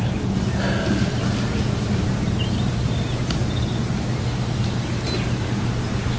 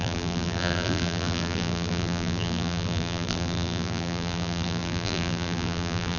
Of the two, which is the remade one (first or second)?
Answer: second